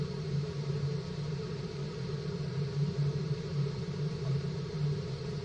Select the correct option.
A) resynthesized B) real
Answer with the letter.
A